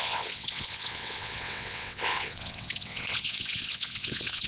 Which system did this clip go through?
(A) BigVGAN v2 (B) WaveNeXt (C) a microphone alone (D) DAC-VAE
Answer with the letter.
B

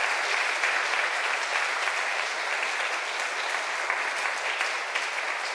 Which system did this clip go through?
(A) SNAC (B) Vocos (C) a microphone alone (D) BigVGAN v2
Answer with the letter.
C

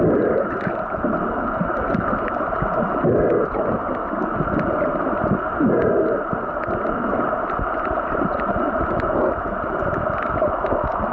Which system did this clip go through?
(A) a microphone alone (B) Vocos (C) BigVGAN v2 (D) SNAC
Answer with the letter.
A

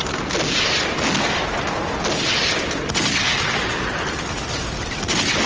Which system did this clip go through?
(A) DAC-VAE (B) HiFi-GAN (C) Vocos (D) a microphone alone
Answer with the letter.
D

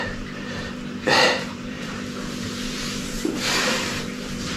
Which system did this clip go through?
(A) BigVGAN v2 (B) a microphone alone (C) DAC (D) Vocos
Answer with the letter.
A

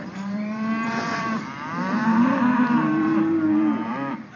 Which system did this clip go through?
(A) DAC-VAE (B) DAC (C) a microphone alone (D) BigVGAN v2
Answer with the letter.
D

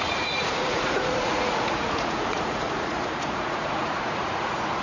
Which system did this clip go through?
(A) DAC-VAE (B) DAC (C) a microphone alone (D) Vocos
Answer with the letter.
D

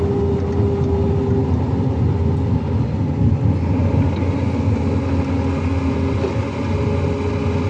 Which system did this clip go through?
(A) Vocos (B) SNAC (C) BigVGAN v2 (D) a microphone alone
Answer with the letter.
D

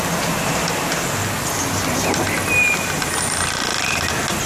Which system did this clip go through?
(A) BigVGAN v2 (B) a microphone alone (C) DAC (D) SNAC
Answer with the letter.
B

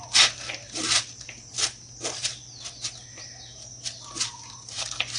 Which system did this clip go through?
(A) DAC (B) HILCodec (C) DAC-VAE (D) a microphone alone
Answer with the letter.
D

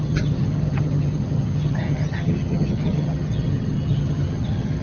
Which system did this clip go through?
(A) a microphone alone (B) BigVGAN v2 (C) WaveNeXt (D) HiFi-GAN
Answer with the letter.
D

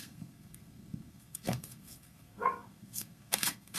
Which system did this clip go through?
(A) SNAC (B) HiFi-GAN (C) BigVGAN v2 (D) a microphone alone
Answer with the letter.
A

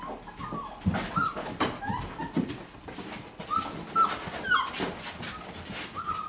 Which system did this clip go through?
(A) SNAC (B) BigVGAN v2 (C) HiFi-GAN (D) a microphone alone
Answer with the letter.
D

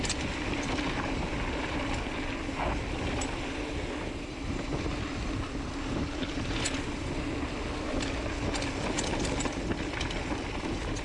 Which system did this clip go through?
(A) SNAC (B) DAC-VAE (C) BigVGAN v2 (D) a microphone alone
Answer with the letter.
D